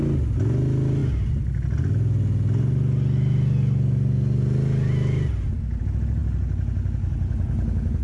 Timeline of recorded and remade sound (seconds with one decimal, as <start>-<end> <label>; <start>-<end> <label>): 0.0-8.0 recorded